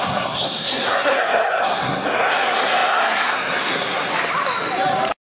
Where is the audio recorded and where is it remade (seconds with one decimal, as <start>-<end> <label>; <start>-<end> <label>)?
0.0-4.1 remade; 4.1-5.3 recorded